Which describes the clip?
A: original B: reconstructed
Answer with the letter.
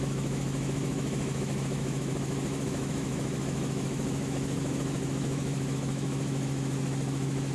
B